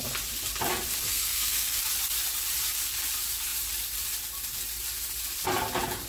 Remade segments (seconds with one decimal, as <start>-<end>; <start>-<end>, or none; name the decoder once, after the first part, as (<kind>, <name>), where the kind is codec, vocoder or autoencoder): 1.1-1.8 (codec, SNAC)